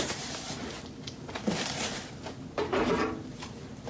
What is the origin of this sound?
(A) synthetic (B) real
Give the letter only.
B